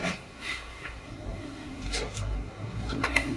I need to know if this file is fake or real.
fake